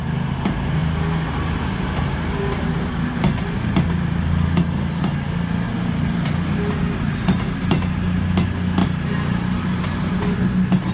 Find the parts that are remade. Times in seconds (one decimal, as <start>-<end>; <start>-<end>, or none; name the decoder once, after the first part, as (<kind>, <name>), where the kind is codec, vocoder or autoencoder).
none